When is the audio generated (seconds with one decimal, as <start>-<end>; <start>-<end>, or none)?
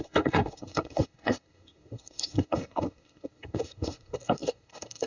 0.0-5.1